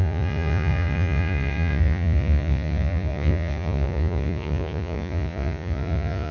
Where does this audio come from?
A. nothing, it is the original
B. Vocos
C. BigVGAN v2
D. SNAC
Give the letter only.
B